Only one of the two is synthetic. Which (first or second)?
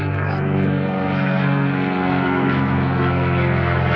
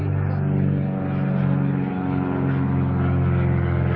first